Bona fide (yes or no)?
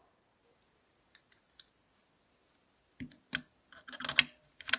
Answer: yes